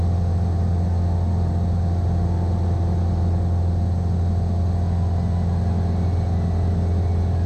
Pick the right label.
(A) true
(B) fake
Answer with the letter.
A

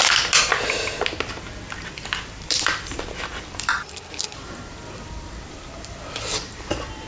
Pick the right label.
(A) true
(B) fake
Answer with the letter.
B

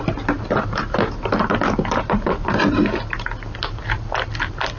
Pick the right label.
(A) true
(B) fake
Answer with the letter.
B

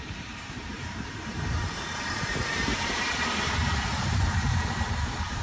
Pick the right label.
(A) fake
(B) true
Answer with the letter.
A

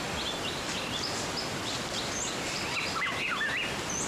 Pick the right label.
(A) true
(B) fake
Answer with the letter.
A